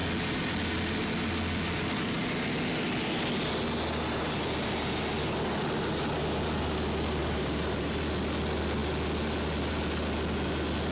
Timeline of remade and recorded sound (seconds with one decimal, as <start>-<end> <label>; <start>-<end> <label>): 0.0-7.2 recorded; 7.2-8.0 remade; 8.0-10.9 recorded